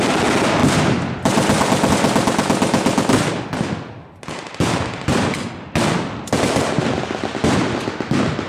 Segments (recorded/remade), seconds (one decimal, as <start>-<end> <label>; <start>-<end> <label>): 0.0-8.5 recorded